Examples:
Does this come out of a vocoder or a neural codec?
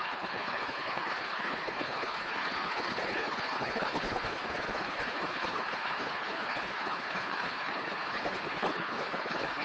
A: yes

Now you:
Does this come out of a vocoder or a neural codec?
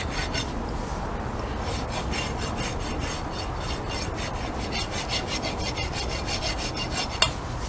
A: no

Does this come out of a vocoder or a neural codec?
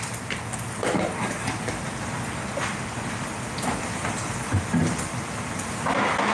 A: no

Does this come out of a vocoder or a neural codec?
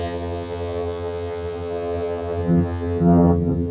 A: yes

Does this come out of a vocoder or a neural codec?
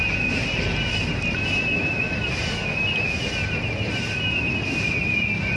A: no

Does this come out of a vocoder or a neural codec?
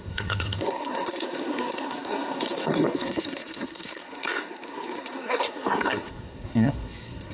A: yes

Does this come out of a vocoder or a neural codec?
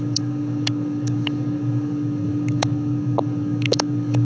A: yes